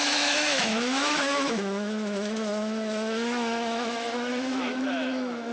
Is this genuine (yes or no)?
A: no